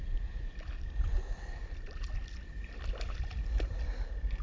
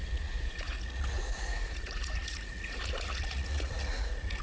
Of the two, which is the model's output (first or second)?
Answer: second